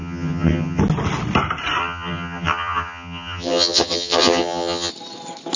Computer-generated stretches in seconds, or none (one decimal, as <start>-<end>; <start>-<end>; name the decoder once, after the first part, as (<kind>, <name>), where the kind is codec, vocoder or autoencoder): 0.0-0.8 (vocoder, HiFi-GAN); 1.8-4.9